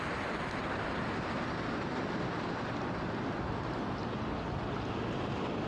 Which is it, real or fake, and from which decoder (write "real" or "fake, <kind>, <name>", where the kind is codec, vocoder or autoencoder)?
real